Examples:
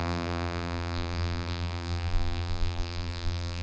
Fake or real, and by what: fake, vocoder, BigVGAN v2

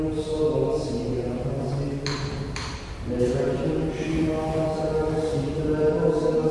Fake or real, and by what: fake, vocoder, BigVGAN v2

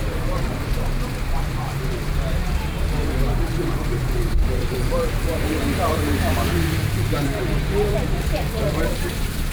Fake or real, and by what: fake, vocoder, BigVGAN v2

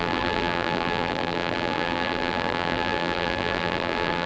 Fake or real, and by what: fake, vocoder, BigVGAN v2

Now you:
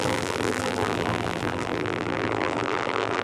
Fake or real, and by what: fake, vocoder, BigVGAN v2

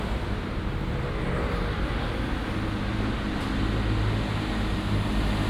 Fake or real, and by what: real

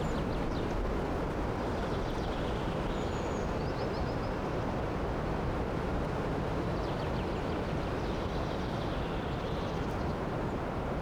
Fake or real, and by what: real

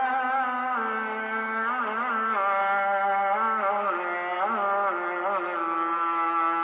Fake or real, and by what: real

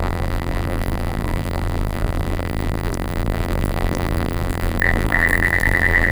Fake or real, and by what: fake, vocoder, BigVGAN v2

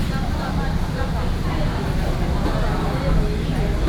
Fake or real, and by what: real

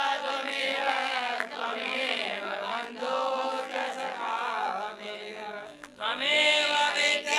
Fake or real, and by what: fake, vocoder, BigVGAN v2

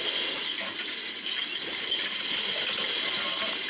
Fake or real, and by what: real